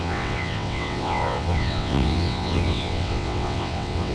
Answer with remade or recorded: remade